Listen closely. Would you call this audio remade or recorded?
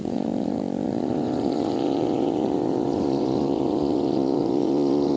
remade